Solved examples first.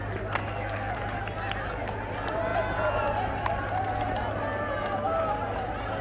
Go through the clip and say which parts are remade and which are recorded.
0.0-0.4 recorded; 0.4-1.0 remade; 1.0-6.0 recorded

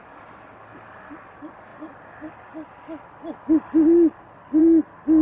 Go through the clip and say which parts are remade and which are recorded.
0.0-5.2 recorded

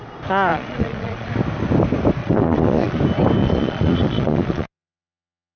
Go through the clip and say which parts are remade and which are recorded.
0.0-0.5 recorded; 0.5-1.3 remade; 1.3-2.2 recorded; 2.2-3.0 remade; 3.0-3.4 recorded; 3.4-5.6 remade

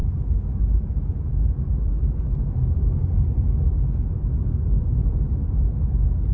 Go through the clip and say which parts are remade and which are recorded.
0.0-6.3 recorded

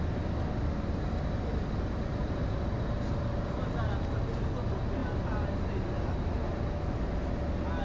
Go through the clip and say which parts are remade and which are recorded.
0.0-7.8 recorded

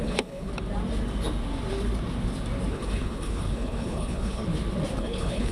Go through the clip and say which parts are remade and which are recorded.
0.0-0.5 remade; 0.5-2.7 recorded; 2.7-4.4 remade; 4.4-5.0 recorded; 5.0-5.5 remade

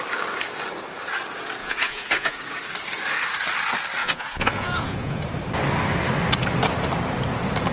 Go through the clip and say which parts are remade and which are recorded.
0.0-1.6 recorded; 1.6-2.4 remade; 2.4-4.0 recorded; 4.0-5.2 remade; 5.2-7.7 recorded